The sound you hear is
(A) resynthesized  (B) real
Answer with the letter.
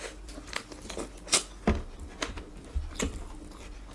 B